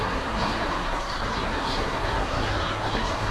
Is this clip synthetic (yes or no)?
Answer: yes